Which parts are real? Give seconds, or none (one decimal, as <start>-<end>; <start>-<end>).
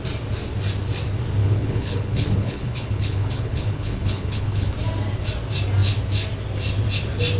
0.0-1.4; 4.7-7.4